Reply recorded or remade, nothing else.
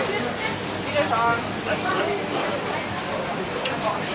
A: recorded